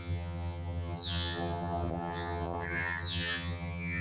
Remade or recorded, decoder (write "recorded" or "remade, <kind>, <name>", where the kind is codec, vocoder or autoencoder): remade, vocoder, HiFi-GAN